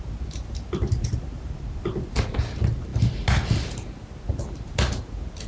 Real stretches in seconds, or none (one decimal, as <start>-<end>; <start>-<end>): 0.0-5.5